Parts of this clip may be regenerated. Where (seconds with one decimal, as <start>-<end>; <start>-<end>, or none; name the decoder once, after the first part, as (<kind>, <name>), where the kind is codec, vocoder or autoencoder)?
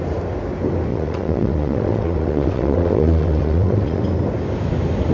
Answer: 0.9-4.0 (vocoder, WaveNeXt)